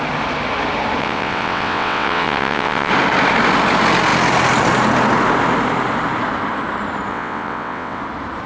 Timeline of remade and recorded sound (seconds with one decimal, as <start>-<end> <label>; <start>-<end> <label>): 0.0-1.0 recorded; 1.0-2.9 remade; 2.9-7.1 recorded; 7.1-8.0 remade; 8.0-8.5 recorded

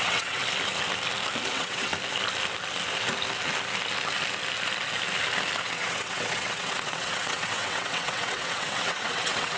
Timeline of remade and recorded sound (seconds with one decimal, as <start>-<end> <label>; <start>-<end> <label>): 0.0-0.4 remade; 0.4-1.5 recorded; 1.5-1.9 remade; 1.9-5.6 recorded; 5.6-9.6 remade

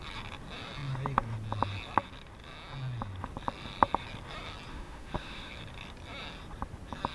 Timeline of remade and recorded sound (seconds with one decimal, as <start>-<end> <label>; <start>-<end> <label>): 0.0-4.7 recorded; 4.7-5.5 remade; 5.5-7.1 recorded

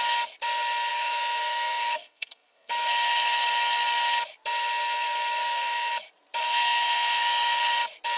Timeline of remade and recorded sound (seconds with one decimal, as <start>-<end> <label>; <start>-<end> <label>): 0.0-0.9 recorded; 0.9-2.7 remade; 2.7-5.4 recorded; 5.4-5.9 remade; 5.9-6.4 recorded; 6.4-7.6 remade; 7.6-8.2 recorded

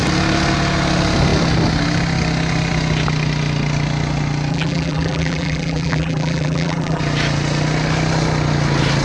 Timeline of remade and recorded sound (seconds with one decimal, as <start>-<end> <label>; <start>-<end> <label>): 0.0-4.5 recorded; 4.5-7.0 remade; 7.0-9.0 recorded

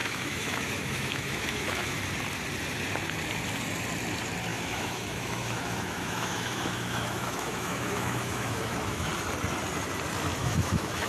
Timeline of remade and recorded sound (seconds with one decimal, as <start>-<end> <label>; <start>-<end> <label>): 0.0-2.0 remade; 2.0-4.5 recorded; 4.5-9.1 remade; 9.1-10.4 recorded; 10.4-11.1 remade

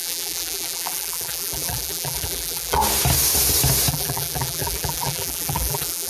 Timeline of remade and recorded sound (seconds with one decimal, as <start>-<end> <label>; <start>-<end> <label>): 0.0-2.8 remade; 2.8-3.9 recorded; 3.9-6.1 remade